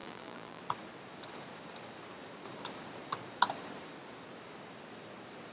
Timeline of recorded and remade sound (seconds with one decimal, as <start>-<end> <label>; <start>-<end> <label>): 0.0-0.6 remade; 0.6-5.5 recorded